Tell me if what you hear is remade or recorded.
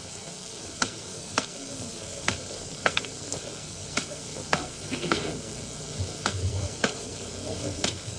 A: remade